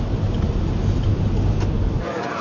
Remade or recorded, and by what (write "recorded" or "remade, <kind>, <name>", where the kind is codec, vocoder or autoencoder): recorded